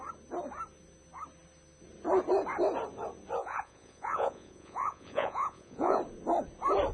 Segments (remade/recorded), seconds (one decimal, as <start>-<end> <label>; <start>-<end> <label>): 0.0-3.4 recorded; 3.4-6.0 remade; 6.0-6.9 recorded